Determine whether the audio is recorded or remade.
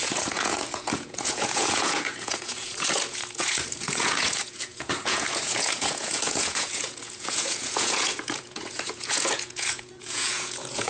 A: remade